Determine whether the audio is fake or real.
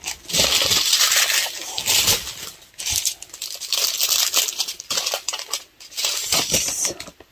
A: real